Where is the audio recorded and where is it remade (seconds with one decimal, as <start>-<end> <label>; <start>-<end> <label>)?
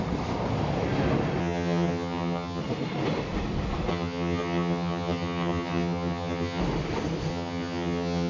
0.0-1.4 recorded; 1.4-2.6 remade; 2.6-3.9 recorded; 3.9-6.6 remade; 6.6-7.3 recorded; 7.3-8.3 remade